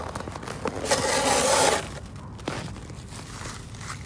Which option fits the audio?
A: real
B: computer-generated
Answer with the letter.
A